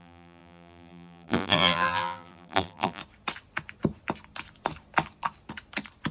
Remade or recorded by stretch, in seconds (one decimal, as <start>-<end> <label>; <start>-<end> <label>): 0.0-3.0 remade; 3.0-6.1 recorded